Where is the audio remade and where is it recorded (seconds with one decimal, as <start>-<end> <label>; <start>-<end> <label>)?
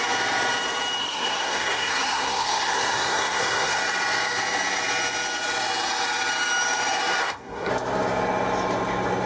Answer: 0.0-1.0 recorded; 1.0-3.8 remade; 3.8-7.2 recorded; 7.2-7.7 remade; 7.7-9.3 recorded